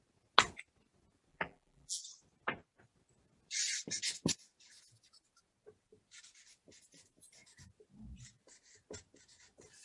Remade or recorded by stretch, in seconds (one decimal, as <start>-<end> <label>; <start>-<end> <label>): 0.0-1.3 recorded; 1.3-2.0 remade; 2.0-9.8 recorded